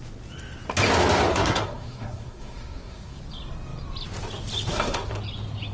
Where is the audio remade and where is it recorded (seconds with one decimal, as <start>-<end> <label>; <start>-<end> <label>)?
0.0-1.3 recorded; 1.3-3.2 remade; 3.2-4.7 recorded; 4.7-5.2 remade; 5.2-5.7 recorded